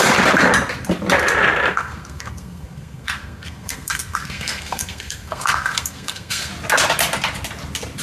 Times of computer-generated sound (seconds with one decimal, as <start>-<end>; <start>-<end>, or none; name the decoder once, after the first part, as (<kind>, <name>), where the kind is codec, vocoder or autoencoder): 1.7-6.5 (codec, SNAC)